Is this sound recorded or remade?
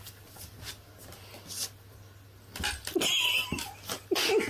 recorded